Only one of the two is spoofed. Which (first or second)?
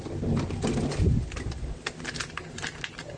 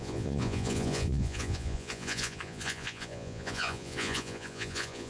second